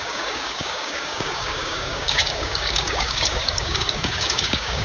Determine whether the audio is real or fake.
fake